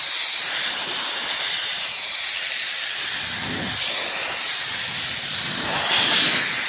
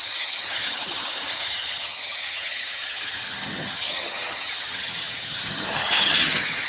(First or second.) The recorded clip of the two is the first